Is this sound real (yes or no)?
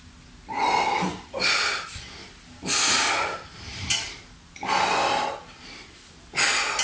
yes